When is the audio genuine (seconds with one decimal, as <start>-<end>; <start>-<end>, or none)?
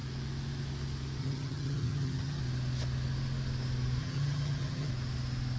0.0-1.2; 2.4-4.0; 4.9-5.6